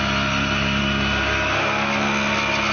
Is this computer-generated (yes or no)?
no